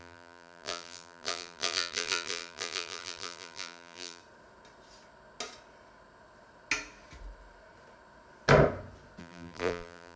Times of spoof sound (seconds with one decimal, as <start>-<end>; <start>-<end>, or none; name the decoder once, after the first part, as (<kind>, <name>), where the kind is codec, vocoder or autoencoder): 0.0-4.2 (vocoder, BigVGAN v2); 9.2-10.2